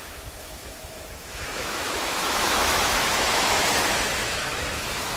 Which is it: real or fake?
fake